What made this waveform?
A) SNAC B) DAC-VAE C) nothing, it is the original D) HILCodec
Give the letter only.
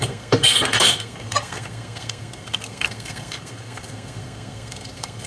A